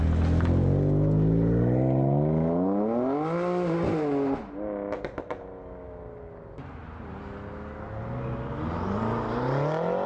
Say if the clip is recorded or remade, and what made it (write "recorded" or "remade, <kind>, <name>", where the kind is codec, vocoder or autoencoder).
recorded